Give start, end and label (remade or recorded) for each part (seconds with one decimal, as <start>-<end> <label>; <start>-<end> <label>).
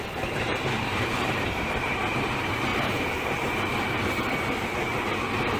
0.0-0.5 recorded; 0.5-1.7 remade; 1.7-2.7 recorded; 2.7-4.3 remade; 4.3-5.6 recorded